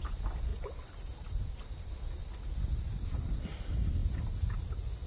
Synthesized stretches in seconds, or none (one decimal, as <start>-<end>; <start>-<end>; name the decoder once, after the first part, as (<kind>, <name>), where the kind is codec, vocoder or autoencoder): none